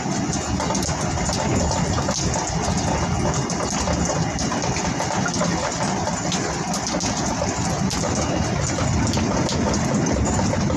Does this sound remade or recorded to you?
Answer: recorded